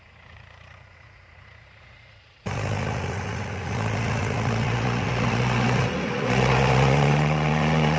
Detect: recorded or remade remade